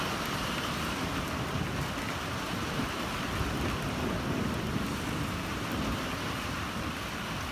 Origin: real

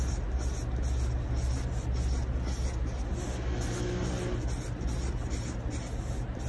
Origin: real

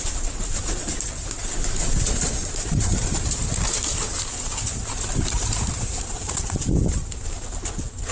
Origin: real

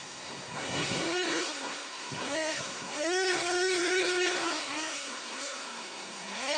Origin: fake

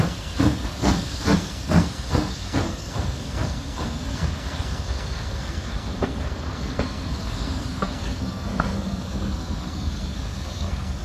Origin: fake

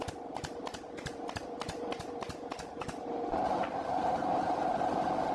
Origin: real